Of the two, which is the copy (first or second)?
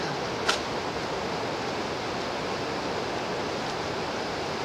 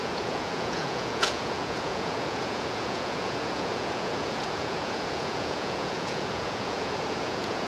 second